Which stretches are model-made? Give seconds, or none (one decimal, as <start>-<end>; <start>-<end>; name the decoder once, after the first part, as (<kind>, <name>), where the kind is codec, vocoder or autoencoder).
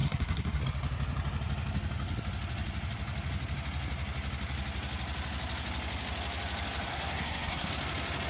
0.0-0.6 (codec, SNAC); 6.9-7.7